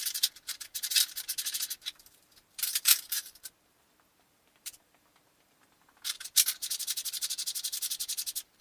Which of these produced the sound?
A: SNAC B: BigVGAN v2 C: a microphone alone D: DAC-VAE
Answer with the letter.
B